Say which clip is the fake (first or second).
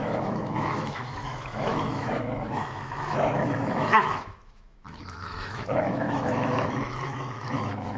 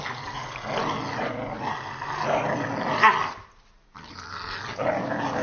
first